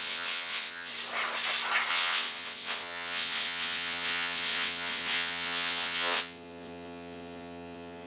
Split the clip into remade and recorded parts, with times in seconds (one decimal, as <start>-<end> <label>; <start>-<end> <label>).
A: 0.0-0.9 remade; 0.9-1.9 recorded; 1.9-8.1 remade